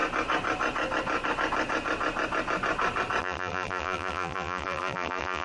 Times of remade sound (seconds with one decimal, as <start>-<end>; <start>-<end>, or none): 3.2-5.4